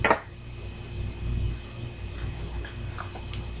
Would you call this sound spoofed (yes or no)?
no